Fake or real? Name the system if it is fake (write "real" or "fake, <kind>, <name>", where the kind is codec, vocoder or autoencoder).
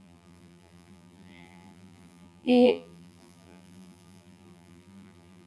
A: fake, vocoder, BigVGAN v2